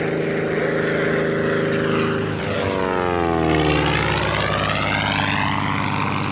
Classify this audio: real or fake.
real